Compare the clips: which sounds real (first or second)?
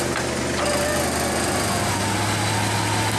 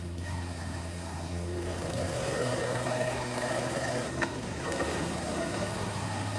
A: first